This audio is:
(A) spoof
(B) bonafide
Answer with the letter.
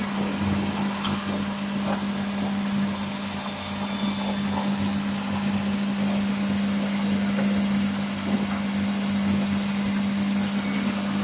B